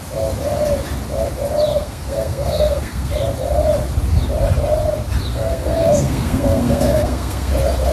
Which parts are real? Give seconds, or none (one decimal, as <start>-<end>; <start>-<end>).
0.0-1.7; 3.1-5.3; 7.5-7.9